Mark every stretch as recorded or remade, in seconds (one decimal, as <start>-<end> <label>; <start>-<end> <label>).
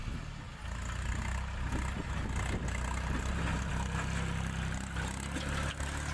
0.0-6.1 recorded